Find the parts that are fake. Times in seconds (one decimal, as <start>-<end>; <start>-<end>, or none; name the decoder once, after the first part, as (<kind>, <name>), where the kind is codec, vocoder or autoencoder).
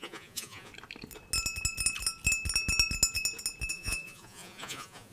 0.0-0.7 (vocoder, Vocos); 3.7-5.1